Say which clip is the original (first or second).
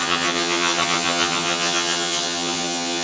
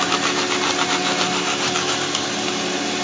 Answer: second